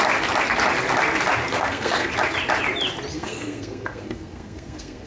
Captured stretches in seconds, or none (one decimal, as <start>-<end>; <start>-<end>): 0.0-1.4; 2.1-3.1